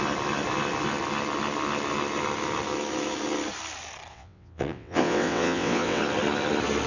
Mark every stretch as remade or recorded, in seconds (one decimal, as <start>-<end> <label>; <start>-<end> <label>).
0.0-4.1 recorded; 4.1-6.0 remade; 6.0-6.9 recorded